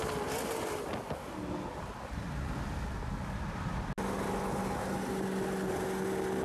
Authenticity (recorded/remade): recorded